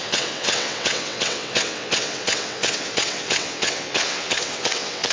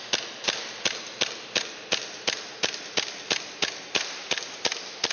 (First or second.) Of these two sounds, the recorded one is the second